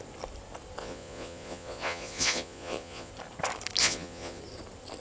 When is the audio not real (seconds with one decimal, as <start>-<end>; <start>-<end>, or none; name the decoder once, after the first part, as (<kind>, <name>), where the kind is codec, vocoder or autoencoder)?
0.8-3.1 (vocoder, Vocos); 3.8-4.4